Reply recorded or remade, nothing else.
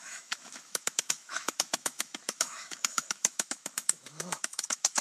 remade